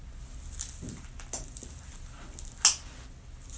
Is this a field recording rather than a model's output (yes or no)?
yes